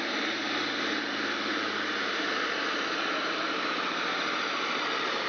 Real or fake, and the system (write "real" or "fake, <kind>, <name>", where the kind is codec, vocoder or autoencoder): fake, vocoder, BigVGAN v2